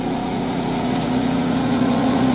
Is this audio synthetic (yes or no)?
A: yes